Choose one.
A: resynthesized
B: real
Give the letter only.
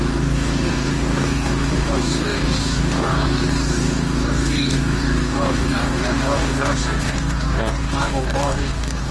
A